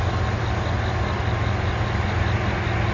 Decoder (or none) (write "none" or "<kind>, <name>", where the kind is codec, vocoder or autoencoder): none